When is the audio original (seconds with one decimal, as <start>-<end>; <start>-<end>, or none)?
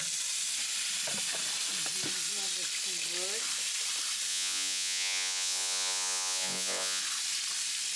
0.0-4.3; 7.0-8.0